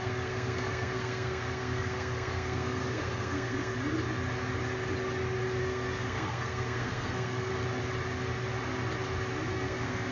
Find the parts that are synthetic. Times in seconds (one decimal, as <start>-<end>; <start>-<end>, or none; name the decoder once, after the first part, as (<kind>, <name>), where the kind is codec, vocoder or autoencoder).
0.0-3.7 (codec, SNAC); 5.6-7.5; 9.5-10.1